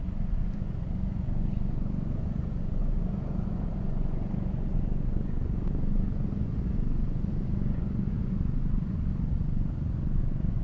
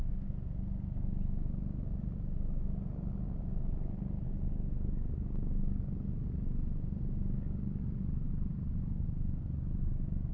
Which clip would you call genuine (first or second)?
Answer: second